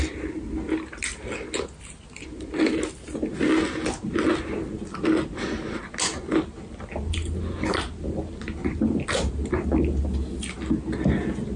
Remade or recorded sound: recorded